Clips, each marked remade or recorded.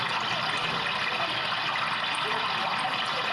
recorded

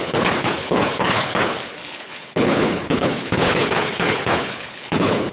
remade